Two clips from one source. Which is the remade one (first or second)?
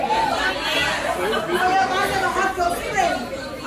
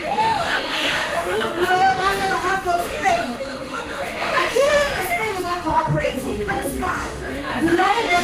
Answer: second